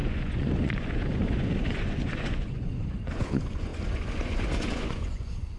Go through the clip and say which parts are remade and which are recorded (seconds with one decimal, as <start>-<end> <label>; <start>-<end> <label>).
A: 0.0-5.6 remade